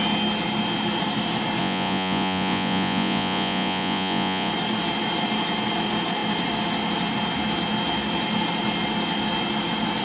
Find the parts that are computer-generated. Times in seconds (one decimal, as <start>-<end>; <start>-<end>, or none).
1.6-4.5